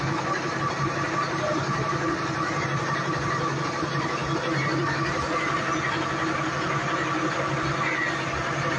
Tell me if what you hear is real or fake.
real